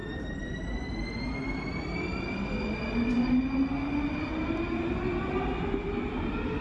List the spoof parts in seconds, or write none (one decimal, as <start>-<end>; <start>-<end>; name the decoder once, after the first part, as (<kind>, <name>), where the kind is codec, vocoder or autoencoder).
none